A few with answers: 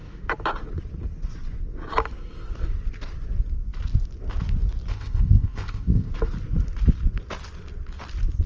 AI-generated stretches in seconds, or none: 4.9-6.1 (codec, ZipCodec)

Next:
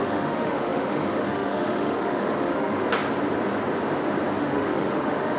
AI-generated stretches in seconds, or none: 0.0-2.8 (autoencoder, DAC-VAE); 4.4-5.4

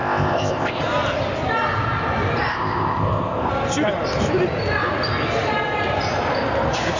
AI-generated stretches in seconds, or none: 0.0-0.8 (codec, ZipCodec); 2.5-3.5

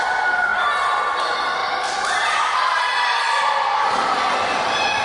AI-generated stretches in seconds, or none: none

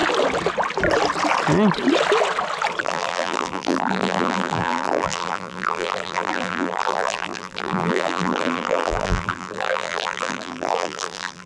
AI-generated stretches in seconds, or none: 2.8-11.5 (vocoder, BigVGAN v2)